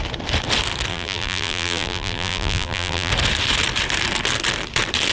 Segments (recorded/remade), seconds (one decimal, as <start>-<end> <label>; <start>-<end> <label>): 0.0-0.9 recorded; 0.9-3.1 remade; 3.1-5.1 recorded